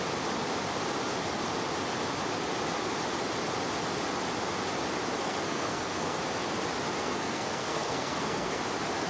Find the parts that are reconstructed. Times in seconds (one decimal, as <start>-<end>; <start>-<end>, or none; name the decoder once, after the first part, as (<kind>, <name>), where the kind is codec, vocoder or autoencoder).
5.2-6.2 (codec, SNAC); 7.0-8.6